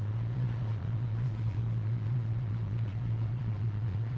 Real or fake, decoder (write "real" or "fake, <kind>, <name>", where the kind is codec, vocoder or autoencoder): fake, vocoder, Vocos